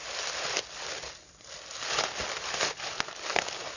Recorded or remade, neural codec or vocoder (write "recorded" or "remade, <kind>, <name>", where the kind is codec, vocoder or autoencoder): recorded